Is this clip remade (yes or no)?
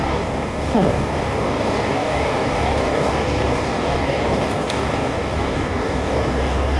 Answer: yes